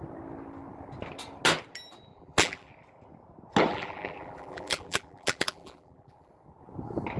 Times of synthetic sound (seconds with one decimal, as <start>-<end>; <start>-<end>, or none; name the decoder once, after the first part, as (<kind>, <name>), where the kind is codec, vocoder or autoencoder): 2.1-2.7 (vocoder, BigVGAN v2); 3.7-6.3